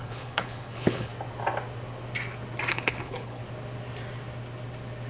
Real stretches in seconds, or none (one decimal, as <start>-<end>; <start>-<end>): 1.1-2.7; 3.4-5.1